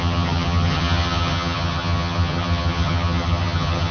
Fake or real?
fake